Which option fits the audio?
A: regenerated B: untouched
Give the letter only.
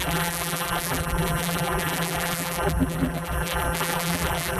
A